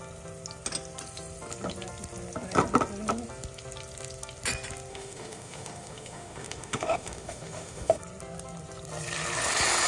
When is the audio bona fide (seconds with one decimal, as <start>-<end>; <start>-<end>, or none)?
0.0-4.9; 8.0-9.9